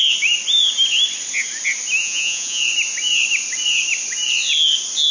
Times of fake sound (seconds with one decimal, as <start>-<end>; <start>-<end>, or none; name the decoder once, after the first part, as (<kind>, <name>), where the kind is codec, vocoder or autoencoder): 2.0-2.6 (vocoder, Vocos)